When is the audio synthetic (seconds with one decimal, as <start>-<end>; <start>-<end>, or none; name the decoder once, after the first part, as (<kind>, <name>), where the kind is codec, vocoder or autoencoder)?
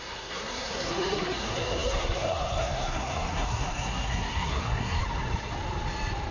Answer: 0.0-5.0 (codec, SNAC)